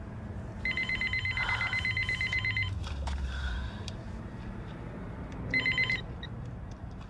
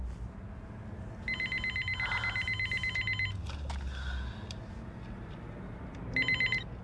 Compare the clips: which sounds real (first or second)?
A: second